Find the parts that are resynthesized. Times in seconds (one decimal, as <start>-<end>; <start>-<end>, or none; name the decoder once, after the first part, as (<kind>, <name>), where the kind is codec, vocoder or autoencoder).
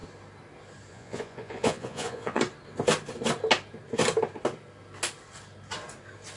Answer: 0.9-2.4 (vocoder, Vocos)